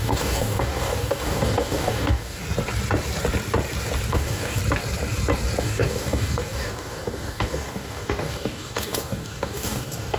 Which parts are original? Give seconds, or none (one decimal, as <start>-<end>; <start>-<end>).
2.4-4.1; 4.6-5.6